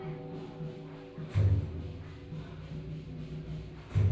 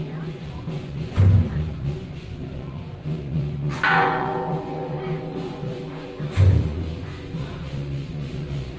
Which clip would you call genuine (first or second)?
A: first